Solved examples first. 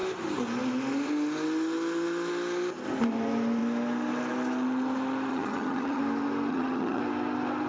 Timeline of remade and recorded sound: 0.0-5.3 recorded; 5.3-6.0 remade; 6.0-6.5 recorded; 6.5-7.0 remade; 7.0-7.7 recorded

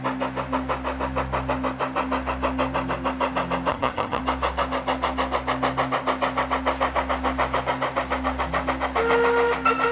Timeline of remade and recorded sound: 0.0-3.7 recorded; 3.7-4.2 remade; 4.2-9.9 recorded

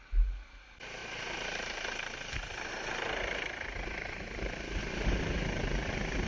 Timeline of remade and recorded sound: 0.0-6.3 recorded

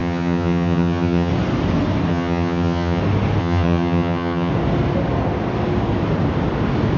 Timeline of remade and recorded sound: 0.0-1.3 remade; 1.3-2.1 recorded; 2.1-3.0 remade; 3.0-3.4 recorded; 3.4-4.5 remade; 4.5-7.0 recorded

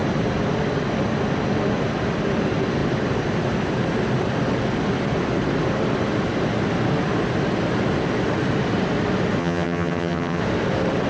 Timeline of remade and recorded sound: 0.0-9.4 recorded; 9.4-10.4 remade; 10.4-11.1 recorded

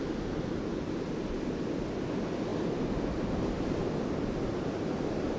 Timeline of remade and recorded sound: 0.0-5.4 recorded

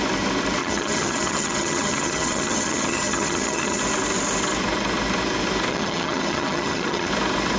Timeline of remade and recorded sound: 0.0-0.6 recorded; 0.6-3.8 remade; 3.8-5.7 recorded; 5.7-7.1 remade; 7.1-7.6 recorded

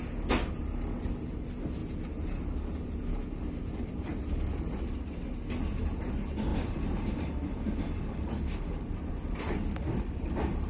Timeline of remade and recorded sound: 0.0-10.7 recorded